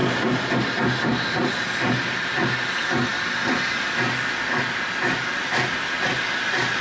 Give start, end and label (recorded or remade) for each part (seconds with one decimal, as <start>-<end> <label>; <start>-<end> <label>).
0.0-6.8 recorded